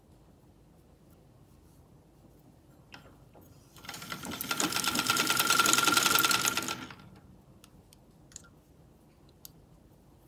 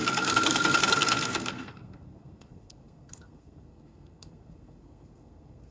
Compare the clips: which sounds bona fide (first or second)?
first